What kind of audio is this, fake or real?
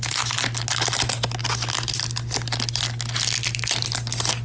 real